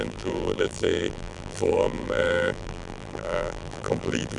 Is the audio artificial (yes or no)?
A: yes